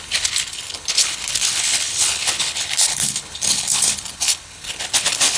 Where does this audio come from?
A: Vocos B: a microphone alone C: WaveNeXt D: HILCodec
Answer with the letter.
D